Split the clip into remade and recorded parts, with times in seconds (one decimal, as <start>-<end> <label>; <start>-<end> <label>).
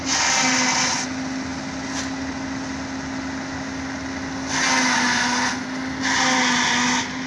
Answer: 0.0-7.3 recorded